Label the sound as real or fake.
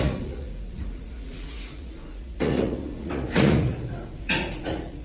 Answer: fake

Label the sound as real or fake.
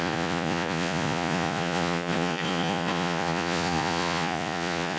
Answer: fake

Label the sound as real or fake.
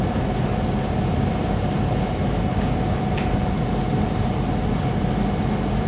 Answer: real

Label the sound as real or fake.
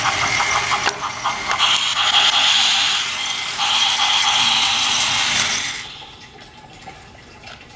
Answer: real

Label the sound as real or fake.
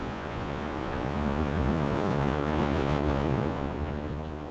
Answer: fake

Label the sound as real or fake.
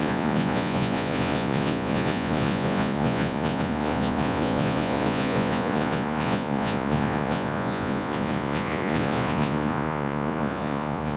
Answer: fake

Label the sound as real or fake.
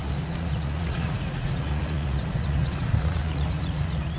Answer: fake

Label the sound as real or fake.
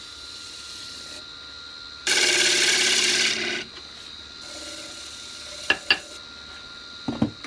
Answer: real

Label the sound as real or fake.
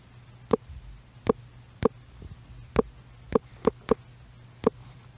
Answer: real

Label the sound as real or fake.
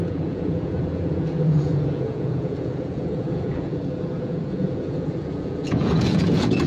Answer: fake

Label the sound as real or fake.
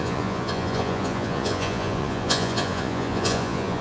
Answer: fake